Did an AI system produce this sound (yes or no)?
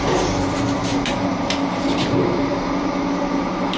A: no